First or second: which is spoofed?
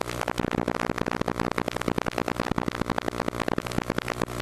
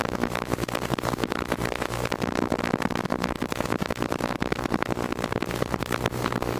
second